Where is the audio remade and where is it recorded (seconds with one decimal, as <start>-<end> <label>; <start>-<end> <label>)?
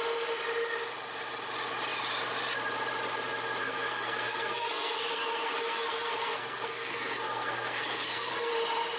0.0-3.6 recorded; 3.6-8.5 remade; 8.5-9.0 recorded